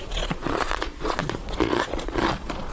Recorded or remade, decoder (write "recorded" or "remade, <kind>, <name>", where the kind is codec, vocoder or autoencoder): remade, vocoder, Vocos